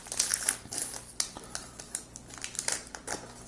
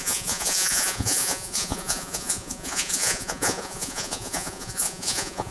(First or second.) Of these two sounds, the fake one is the second